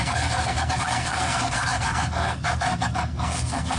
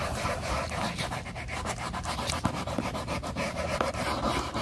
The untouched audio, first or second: second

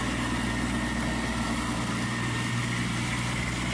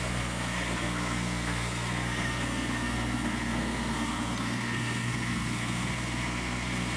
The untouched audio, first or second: first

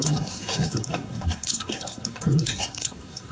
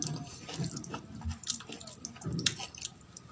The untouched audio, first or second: second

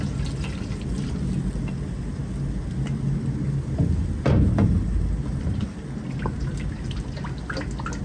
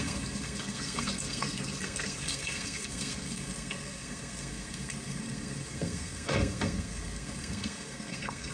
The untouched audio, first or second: first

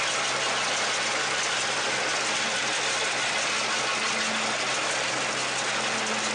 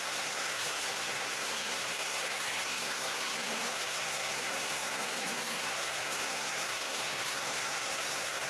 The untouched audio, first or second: first